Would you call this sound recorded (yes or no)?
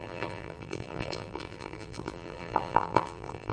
no